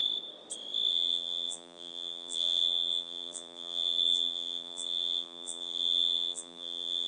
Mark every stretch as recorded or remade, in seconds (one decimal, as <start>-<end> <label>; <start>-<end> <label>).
0.0-0.9 recorded; 0.9-7.1 remade